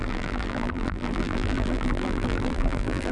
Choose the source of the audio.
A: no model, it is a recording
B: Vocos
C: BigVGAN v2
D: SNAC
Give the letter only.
C